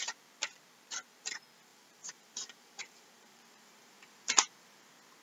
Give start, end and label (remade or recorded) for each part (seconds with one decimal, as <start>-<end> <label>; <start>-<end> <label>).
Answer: 0.0-1.7 recorded; 1.7-4.8 remade; 4.8-5.2 recorded